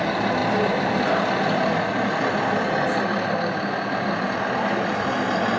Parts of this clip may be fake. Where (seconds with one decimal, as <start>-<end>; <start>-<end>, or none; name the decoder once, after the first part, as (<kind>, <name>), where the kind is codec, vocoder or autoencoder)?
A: 0.4-1.4 (vocoder, BigVGAN v2)